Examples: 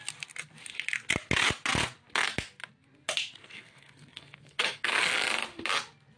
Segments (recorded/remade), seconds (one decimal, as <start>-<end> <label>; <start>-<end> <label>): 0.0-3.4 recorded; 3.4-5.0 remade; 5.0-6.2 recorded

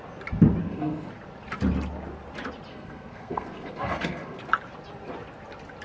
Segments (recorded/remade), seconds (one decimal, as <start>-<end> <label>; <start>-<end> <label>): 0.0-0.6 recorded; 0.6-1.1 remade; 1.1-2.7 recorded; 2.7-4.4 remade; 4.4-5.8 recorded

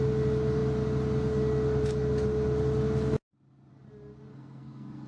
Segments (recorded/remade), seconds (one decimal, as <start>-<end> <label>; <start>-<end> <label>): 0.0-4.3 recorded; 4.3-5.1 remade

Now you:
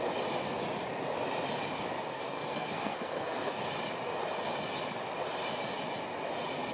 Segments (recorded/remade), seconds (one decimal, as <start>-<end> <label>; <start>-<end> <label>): 0.0-2.1 recorded; 2.1-3.7 remade; 3.7-6.7 recorded